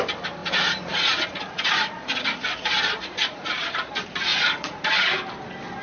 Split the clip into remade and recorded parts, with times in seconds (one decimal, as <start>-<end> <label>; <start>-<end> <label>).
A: 0.0-0.4 recorded; 0.4-3.9 remade; 3.9-4.3 recorded; 4.3-4.9 remade; 4.9-5.8 recorded